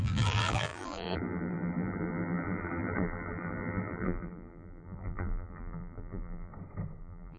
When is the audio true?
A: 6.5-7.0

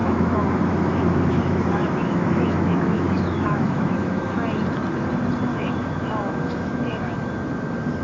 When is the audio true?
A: 4.3-5.5; 7.3-8.0